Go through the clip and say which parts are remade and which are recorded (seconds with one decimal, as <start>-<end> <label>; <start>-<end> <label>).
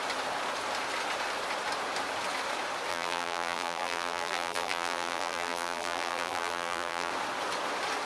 0.0-2.9 recorded; 2.9-7.1 remade; 7.1-8.1 recorded